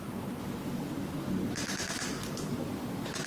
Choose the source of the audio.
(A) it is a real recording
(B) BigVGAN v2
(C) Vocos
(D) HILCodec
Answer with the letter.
A